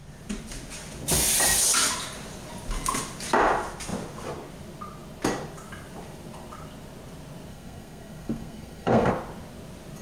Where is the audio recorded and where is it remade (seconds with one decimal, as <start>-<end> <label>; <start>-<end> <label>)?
0.0-7.5 recorded; 7.5-9.1 remade; 9.1-10.0 recorded